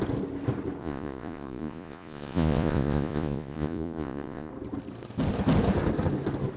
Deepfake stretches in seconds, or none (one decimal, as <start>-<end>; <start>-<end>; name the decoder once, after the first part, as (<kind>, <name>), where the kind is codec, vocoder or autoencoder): 0.8-4.5 (vocoder, Vocos)